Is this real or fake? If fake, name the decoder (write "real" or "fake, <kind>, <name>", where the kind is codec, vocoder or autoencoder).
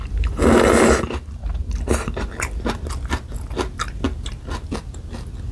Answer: real